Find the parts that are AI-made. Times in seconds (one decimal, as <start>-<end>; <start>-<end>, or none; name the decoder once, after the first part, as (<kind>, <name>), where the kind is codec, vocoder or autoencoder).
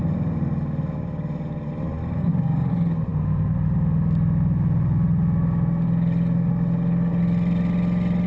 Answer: 2.2-2.7 (codec, DAC)